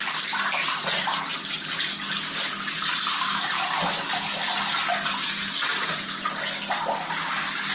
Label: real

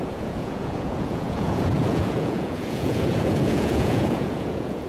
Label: fake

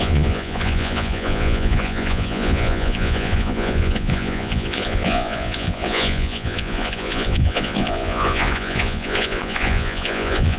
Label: fake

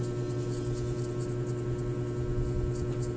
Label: real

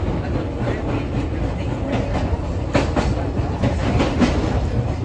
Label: real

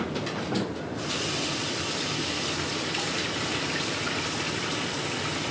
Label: real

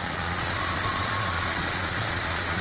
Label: fake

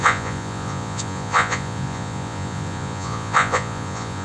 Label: fake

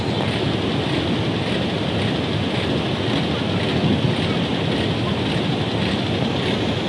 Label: real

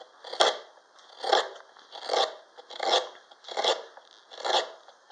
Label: real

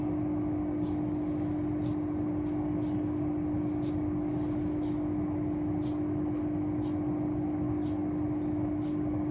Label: real